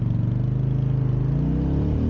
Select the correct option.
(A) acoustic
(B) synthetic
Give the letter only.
A